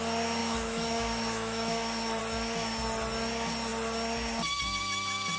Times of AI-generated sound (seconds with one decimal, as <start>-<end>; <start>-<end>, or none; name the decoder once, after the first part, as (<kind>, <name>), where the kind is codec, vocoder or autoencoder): 0.4-2.2 (autoencoder, DAC-VAE)